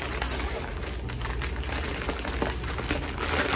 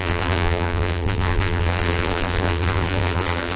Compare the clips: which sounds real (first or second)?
first